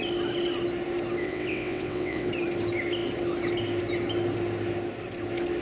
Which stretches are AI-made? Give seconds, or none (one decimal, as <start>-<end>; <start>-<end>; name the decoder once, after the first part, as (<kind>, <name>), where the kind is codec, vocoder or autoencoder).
1.2-2.3 (vocoder, WaveNeXt)